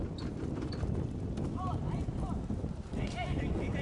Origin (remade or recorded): recorded